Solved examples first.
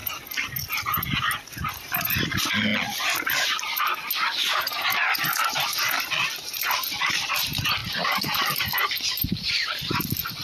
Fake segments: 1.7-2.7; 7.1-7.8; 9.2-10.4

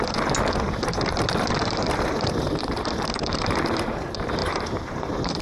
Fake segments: 1.8-2.3; 4.4-5.4

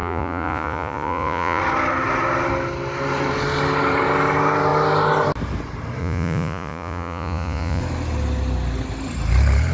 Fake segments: 0.0-1.6; 6.0-7.8

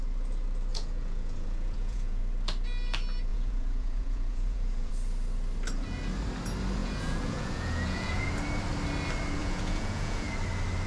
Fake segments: 0.7-2.2; 3.3-4.9; 6.8-8.3; 9.4-10.3

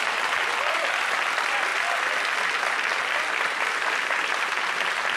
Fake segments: none

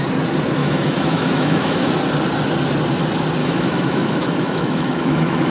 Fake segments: 0.6-1.9; 3.4-5.5